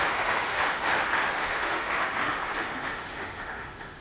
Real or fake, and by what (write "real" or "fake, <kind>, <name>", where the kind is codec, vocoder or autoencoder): fake, autoencoder, DAC-VAE